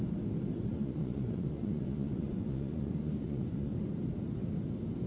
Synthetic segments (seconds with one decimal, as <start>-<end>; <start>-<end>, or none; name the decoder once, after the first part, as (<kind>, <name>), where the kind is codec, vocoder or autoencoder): 0.7-3.8 (vocoder, Vocos)